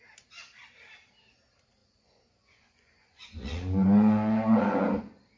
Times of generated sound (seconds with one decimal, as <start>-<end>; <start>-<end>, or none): 1.8-5.0